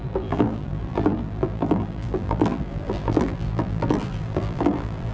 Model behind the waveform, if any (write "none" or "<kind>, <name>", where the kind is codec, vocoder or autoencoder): vocoder, BigVGAN v2